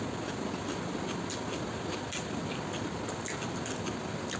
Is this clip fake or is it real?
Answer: real